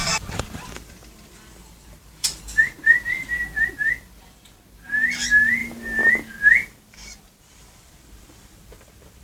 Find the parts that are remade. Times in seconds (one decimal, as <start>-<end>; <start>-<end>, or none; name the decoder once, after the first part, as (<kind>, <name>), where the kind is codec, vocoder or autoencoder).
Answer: 0.0-2.4 (vocoder, BigVGAN v2); 5.6-7.9